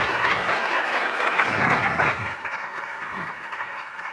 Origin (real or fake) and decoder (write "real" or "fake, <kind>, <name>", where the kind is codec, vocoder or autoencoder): fake, codec, SNAC